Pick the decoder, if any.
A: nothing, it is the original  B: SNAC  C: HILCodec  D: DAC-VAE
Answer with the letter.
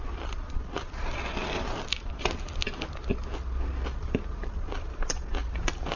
A